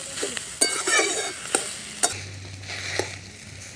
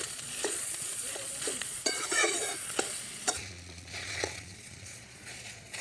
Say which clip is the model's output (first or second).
second